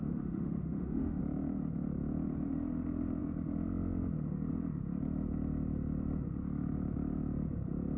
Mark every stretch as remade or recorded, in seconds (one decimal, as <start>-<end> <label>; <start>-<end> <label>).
0.0-1.2 remade; 1.2-8.0 recorded